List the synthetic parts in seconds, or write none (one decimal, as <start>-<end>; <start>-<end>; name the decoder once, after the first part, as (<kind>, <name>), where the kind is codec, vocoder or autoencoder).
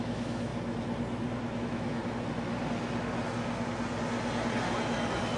0.0-0.5 (autoencoder, DAC-VAE); 1.6-2.0